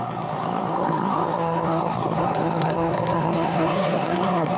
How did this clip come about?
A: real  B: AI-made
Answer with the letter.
B